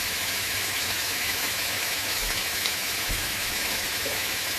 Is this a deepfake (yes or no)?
yes